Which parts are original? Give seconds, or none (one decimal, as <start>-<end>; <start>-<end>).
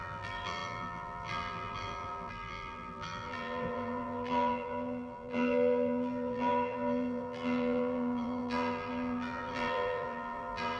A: none